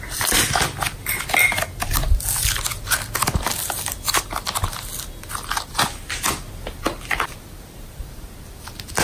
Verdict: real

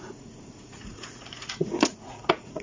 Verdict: fake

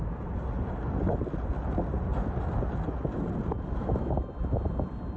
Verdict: real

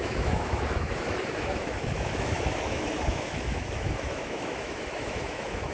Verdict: fake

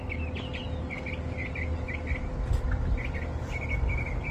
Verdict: real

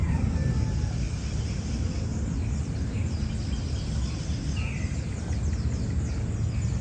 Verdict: real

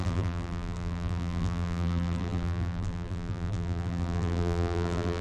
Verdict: fake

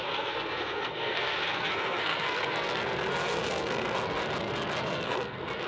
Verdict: fake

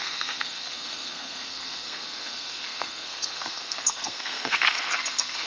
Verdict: fake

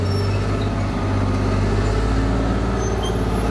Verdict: real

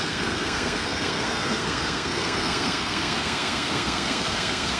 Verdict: fake